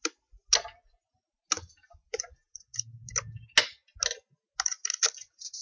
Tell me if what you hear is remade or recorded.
recorded